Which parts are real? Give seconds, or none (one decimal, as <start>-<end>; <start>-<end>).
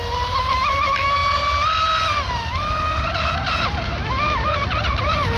0.0-4.9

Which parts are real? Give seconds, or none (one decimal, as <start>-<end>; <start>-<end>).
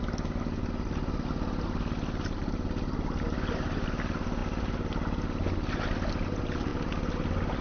0.0-7.6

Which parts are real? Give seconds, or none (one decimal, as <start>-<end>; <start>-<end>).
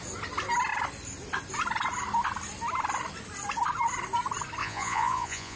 0.0-4.6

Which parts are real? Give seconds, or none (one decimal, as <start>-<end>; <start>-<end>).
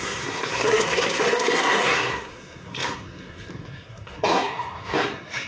none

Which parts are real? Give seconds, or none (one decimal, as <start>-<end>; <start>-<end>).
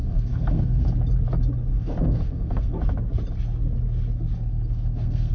0.9-1.7; 2.8-4.5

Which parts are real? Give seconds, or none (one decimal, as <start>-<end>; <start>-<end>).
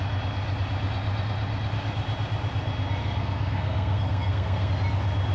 0.0-3.0; 4.7-5.3